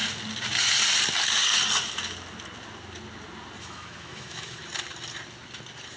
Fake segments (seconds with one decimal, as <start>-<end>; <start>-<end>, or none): 3.6-4.6